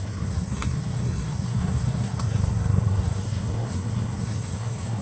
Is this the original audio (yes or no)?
no